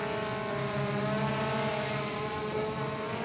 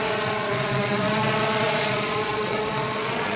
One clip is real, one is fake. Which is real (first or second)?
first